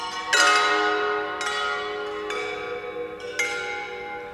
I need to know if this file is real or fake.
real